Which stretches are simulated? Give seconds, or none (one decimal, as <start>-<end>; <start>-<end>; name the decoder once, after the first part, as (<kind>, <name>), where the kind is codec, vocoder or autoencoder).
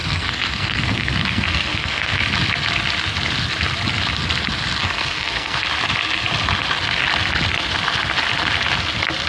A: 0.0-2.2 (codec, SNAC); 4.8-5.6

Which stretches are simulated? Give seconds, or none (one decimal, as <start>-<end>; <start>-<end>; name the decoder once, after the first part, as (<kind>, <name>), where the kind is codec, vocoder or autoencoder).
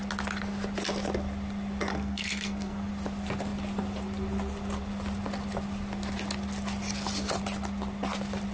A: 1.9-2.9 (codec, SNAC)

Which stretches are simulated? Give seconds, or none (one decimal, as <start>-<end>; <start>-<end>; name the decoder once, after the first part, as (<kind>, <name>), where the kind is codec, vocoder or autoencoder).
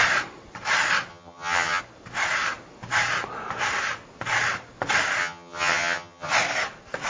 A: 1.1-1.8 (vocoder, HiFi-GAN); 5.2-6.3